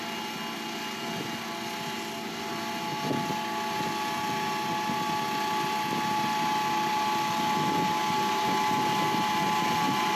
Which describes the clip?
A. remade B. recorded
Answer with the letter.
B